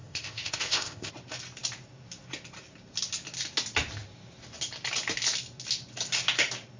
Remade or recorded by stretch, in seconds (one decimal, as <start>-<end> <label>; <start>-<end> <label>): 0.0-1.1 remade; 1.1-6.8 recorded

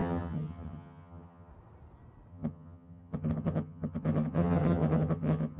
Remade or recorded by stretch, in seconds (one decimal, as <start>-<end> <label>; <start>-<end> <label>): 0.0-1.5 remade; 1.5-2.3 recorded; 2.3-5.6 remade

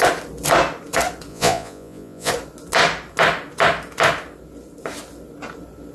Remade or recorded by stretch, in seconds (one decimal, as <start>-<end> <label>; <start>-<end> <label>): 0.0-1.3 recorded; 1.3-2.3 remade; 2.3-5.9 recorded

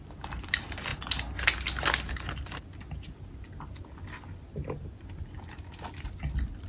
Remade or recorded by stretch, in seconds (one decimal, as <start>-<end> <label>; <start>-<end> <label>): 0.0-6.7 recorded

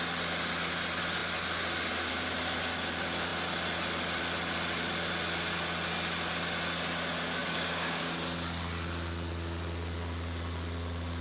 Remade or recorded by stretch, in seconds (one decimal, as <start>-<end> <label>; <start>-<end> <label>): 0.0-7.4 recorded; 7.4-8.0 remade; 8.0-11.2 recorded

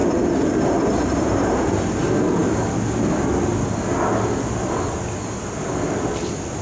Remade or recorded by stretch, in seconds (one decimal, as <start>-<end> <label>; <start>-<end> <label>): 0.0-1.7 remade; 1.7-6.6 recorded

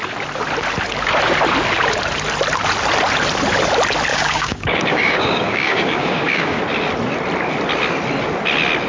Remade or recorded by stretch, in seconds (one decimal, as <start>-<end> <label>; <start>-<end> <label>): 0.0-4.1 recorded; 4.1-6.6 remade; 6.6-8.9 recorded

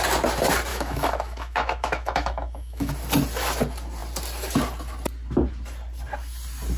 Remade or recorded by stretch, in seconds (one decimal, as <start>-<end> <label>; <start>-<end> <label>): 0.0-0.7 recorded; 0.7-2.9 remade; 2.9-6.8 recorded